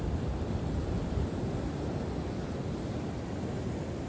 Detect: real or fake real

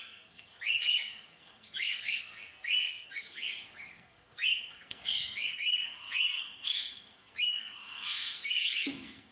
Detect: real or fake fake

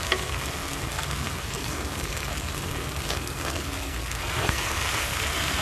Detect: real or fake fake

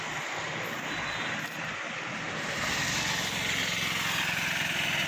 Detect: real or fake real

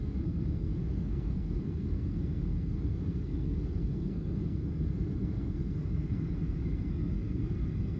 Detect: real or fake fake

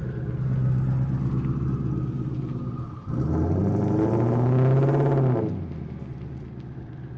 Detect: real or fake real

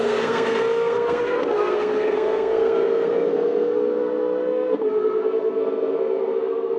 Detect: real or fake fake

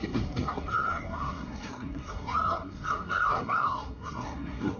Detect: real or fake fake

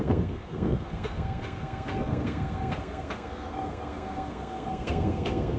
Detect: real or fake fake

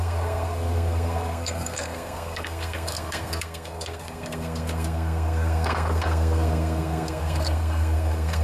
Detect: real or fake fake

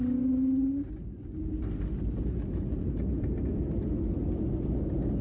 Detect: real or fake real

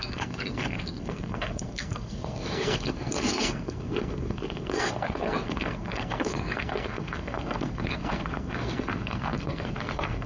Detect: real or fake fake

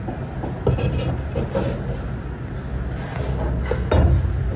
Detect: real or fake real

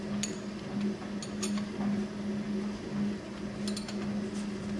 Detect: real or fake real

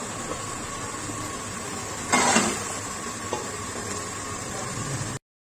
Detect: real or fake real